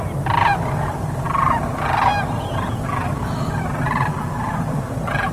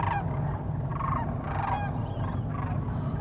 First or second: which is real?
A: second